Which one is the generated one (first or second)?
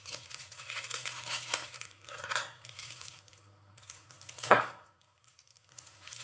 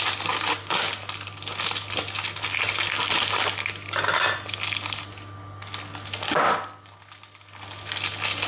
first